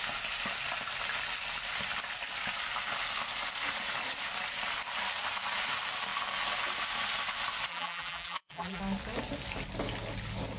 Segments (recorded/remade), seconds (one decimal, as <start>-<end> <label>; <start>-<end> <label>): 0.0-7.7 recorded; 7.7-8.8 remade; 8.8-10.6 recorded